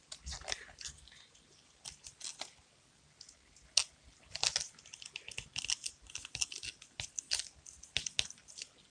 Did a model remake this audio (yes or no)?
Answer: no